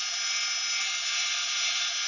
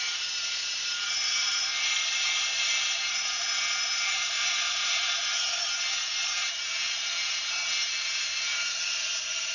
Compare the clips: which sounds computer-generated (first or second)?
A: second